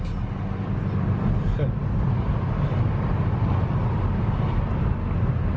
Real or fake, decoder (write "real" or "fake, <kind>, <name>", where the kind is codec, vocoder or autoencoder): real